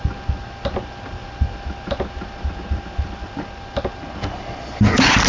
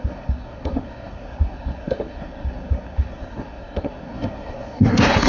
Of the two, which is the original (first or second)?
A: first